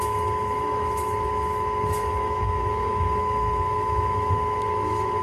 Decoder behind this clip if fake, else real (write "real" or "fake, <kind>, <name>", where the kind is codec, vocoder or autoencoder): fake, autoencoder, DAC-VAE